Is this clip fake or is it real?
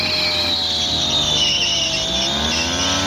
real